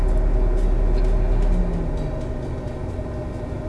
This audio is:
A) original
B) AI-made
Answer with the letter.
A